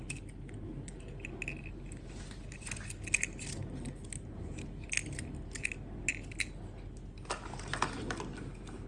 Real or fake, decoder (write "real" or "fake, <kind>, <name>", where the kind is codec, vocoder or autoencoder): real